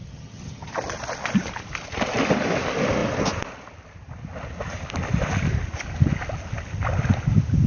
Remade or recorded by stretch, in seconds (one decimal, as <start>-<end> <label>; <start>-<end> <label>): 0.0-0.7 remade; 0.7-7.7 recorded